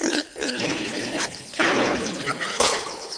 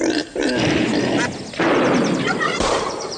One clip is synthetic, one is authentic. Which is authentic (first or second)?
second